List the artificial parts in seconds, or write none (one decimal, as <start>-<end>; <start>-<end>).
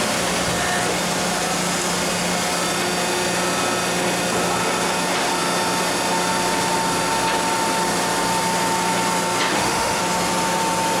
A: 9.5-10.0